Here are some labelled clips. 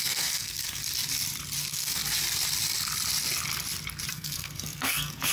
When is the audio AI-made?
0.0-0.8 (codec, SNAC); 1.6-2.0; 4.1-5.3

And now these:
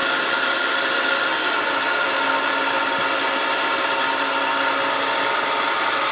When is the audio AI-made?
none

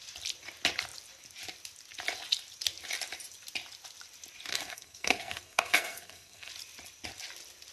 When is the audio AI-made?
4.5-6.5 (codec, SNAC)

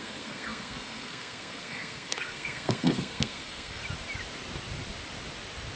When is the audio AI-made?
0.0-3.8 (codec, SNAC)

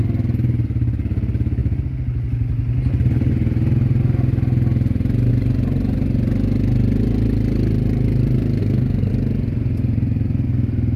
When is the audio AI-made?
8.6-9.1 (codec, SNAC)

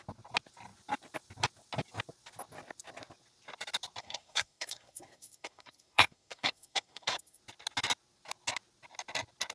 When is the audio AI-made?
4.0-7.4 (codec, SNAC)